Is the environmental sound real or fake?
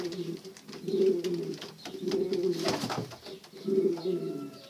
real